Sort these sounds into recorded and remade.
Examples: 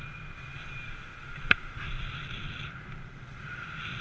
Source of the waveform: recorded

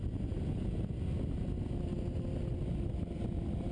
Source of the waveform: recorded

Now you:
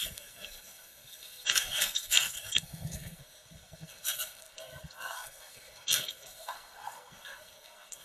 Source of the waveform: remade